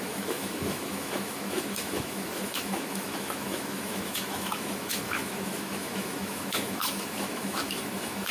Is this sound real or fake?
fake